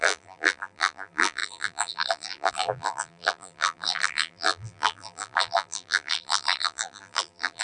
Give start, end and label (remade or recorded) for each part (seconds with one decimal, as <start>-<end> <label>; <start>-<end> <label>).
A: 0.0-7.6 remade